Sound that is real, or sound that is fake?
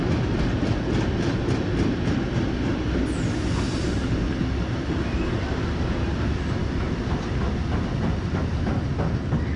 real